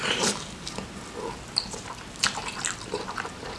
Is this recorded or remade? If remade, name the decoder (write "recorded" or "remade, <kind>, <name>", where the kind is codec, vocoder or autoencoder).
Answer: remade, vocoder, BigVGAN v2